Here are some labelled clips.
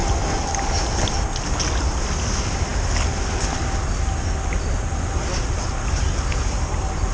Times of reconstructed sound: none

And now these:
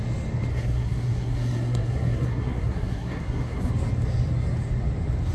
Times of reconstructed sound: 0.5-3.7 (codec, SNAC)